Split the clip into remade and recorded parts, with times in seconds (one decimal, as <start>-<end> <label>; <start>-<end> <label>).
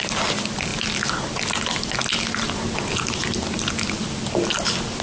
0.0-5.0 recorded